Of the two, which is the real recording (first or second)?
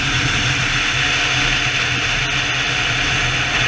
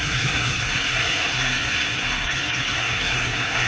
first